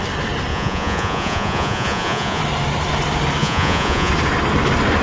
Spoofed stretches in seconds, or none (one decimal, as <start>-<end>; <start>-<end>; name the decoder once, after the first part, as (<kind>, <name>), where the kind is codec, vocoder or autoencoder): 0.5-2.4 (vocoder, Vocos); 3.4-4.1